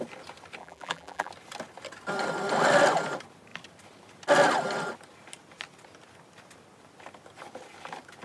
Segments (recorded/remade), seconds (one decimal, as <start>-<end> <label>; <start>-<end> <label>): 0.0-0.6 recorded; 0.6-1.3 remade; 1.3-8.2 recorded